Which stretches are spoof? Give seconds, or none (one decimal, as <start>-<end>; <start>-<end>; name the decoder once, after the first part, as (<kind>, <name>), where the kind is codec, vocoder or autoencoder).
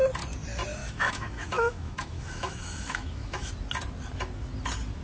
0.8-3.5 (autoencoder, DAC-VAE)